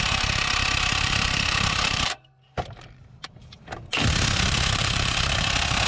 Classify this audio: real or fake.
fake